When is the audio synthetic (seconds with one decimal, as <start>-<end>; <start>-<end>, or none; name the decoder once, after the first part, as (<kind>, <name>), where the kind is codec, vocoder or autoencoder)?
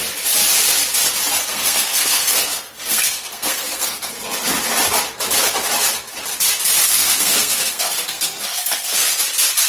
1.4-4.1 (codec, SNAC); 6.8-9.2